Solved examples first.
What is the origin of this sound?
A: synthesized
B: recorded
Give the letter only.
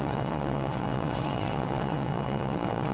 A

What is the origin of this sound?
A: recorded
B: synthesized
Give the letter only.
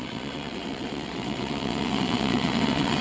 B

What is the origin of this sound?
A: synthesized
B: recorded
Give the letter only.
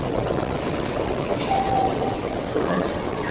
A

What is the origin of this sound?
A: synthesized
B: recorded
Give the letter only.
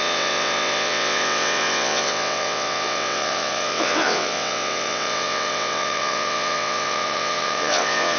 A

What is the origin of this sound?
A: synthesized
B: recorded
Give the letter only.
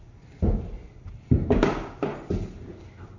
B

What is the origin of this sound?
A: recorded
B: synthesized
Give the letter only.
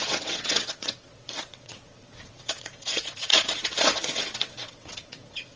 B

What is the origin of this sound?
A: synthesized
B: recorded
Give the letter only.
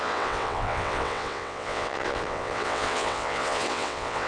A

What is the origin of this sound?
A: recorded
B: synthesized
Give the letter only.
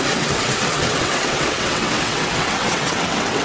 B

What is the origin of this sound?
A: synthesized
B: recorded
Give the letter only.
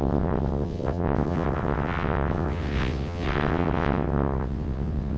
A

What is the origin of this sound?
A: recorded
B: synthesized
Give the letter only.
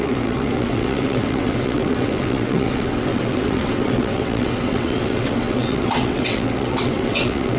B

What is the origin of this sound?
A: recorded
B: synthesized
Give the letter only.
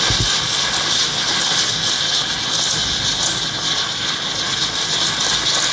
A